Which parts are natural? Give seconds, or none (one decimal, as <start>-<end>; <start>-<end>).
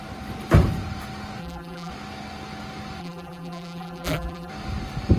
0.0-1.4; 1.9-3.0; 4.5-5.2